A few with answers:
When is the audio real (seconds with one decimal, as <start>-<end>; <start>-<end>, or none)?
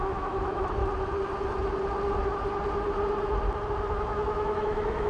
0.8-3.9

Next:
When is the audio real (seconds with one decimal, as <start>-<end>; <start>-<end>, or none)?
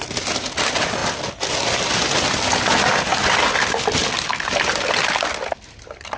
0.0-6.2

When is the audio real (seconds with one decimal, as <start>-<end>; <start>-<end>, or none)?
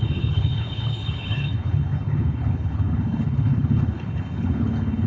none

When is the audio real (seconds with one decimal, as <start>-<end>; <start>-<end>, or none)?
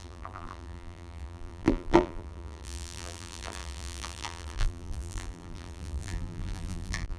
none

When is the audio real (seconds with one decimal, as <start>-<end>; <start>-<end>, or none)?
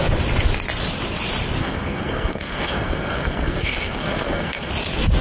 0.0-1.6; 4.7-5.2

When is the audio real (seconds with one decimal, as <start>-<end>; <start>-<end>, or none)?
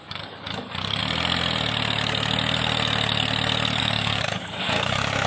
1.0-3.8